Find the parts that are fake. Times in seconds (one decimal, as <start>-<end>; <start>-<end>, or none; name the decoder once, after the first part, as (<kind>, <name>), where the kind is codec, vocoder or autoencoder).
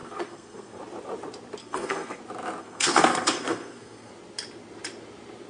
0.0-0.8 (codec, SNAC); 1.6-2.2; 2.6-4.1